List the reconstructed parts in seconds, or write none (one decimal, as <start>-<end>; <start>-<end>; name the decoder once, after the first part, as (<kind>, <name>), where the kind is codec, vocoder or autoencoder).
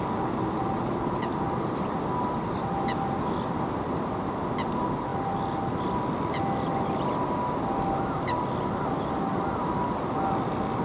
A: none